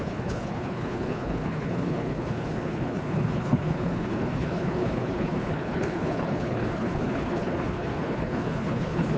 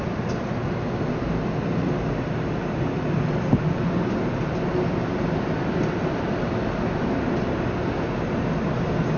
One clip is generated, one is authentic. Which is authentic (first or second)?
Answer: second